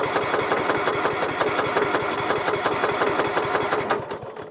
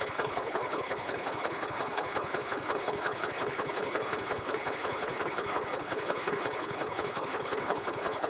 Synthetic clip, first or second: second